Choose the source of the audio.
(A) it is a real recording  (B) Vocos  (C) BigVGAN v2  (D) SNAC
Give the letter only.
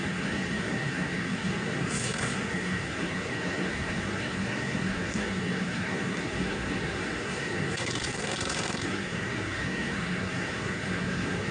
D